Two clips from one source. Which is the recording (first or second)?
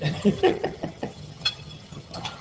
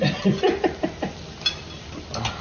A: second